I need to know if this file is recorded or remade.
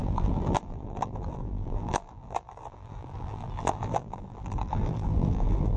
remade